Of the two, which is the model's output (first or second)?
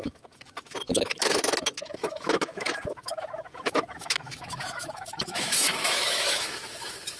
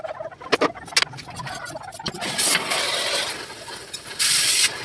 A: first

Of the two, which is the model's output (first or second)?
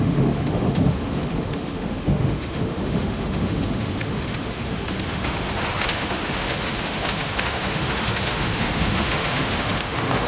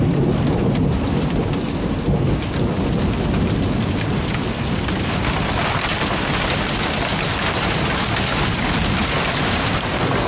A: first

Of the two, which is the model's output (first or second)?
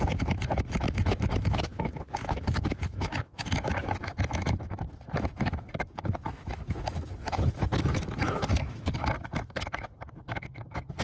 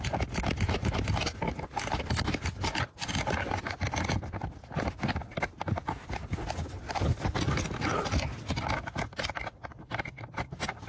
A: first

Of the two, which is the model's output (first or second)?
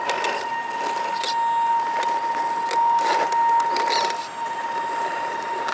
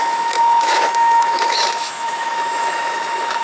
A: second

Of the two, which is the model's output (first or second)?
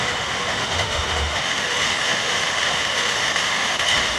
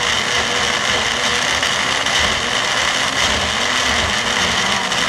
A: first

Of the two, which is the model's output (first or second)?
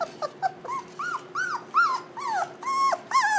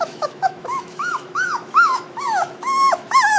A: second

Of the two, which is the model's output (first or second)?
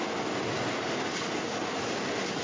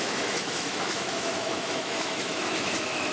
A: second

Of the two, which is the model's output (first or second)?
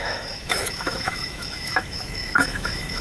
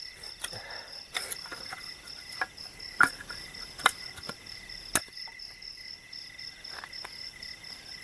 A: first